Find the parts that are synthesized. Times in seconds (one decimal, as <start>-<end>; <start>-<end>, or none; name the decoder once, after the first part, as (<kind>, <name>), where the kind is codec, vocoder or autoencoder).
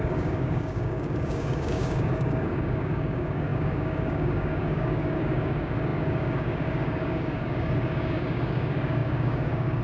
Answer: 0.0-9.8 (codec, DAC)